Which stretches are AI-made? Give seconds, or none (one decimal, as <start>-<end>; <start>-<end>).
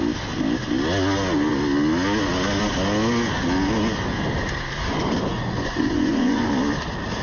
5.3-6.5